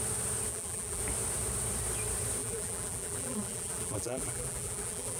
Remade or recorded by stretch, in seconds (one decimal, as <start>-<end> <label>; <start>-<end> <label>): 0.0-0.5 recorded; 0.5-1.0 remade; 1.0-2.4 recorded; 2.4-5.2 remade